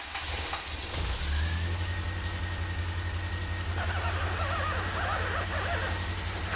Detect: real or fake real